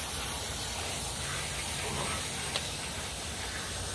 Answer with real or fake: real